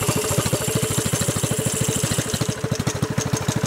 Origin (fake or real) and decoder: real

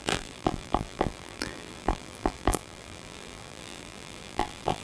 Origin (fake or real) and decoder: fake, vocoder, BigVGAN v2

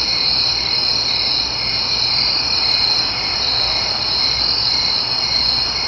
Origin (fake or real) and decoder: real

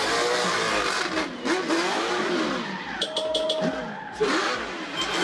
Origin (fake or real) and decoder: real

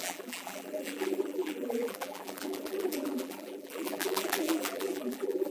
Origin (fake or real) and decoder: fake, vocoder, BigVGAN v2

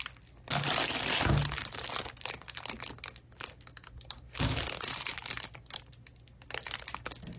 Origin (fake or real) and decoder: real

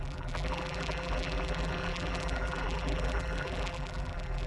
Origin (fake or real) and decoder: fake, vocoder, BigVGAN v2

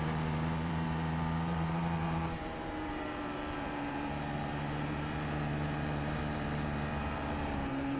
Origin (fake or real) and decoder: fake, vocoder, BigVGAN v2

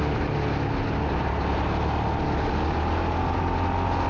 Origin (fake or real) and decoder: real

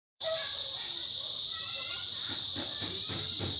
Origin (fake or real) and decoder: fake, vocoder, BigVGAN v2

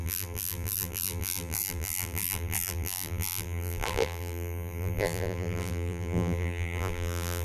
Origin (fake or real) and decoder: fake, vocoder, BigVGAN v2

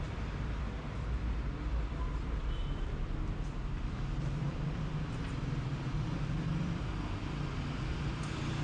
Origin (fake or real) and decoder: fake, vocoder, BigVGAN v2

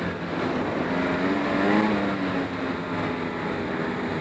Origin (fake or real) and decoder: real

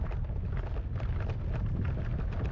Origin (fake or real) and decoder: real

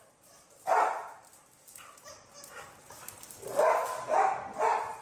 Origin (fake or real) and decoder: real